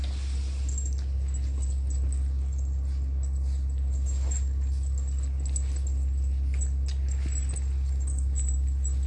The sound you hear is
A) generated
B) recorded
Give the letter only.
B